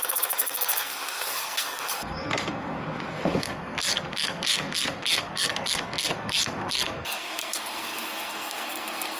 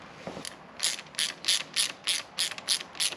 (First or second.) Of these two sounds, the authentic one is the second